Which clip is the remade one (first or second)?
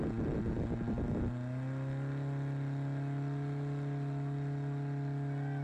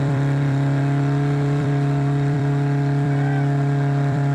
second